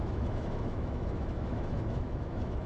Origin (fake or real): fake